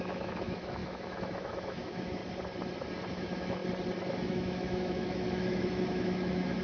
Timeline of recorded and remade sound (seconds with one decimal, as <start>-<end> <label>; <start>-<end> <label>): 0.0-2.2 remade; 2.2-3.1 recorded; 3.1-3.6 remade; 3.6-4.1 recorded; 4.1-6.6 remade